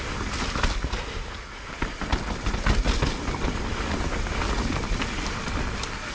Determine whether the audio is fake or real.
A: real